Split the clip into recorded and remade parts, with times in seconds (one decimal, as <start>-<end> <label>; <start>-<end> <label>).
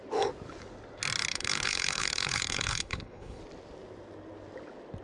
0.0-1.3 recorded; 1.3-3.4 remade; 3.4-5.0 recorded